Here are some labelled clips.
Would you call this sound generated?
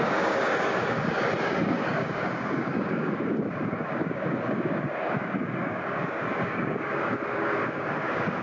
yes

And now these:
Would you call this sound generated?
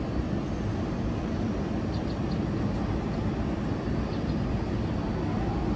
no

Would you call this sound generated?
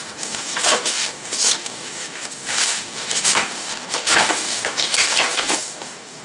yes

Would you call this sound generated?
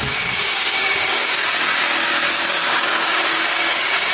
yes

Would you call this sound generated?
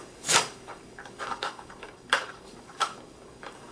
yes